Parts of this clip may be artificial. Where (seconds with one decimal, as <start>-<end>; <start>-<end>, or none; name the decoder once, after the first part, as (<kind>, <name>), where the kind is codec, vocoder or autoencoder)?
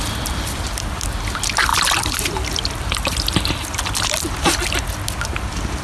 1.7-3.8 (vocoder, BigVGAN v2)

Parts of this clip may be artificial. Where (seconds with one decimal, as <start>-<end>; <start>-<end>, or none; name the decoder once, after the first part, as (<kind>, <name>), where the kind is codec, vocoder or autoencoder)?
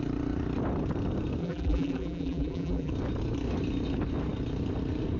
1.4-2.9 (vocoder, BigVGAN v2)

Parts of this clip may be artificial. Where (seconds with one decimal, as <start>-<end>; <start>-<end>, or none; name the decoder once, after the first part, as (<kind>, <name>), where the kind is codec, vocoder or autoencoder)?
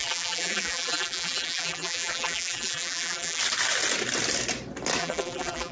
0.0-3.4 (vocoder, BigVGAN v2); 5.0-5.7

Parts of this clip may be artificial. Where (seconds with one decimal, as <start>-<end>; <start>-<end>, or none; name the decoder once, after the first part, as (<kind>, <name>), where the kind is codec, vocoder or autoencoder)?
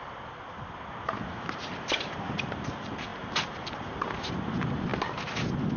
3.1-4.3 (vocoder, BigVGAN v2)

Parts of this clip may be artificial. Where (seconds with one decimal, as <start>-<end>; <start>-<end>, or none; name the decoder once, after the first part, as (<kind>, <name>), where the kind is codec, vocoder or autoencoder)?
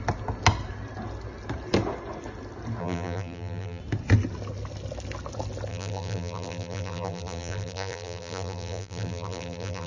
2.8-3.8 (vocoder, BigVGAN v2); 5.7-9.9